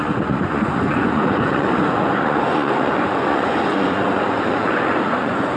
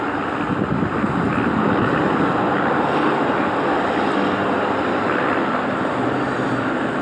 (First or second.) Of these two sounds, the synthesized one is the first